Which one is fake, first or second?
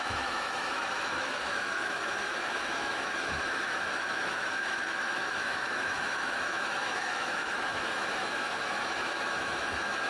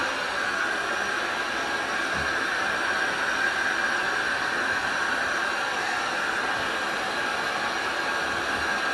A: first